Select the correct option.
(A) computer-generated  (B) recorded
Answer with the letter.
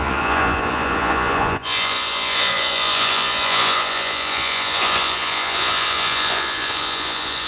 A